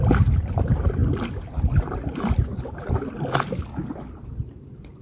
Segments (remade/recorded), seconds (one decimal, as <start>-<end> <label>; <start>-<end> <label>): 0.0-5.0 recorded